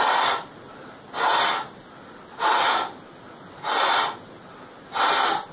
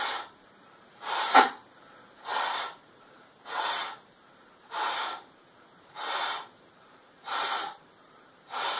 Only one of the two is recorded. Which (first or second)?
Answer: first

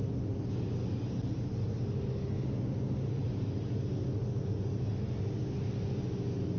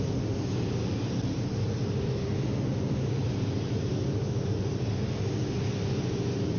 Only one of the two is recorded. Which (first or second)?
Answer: first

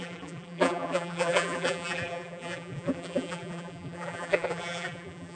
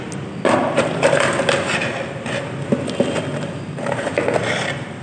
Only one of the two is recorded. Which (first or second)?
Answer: second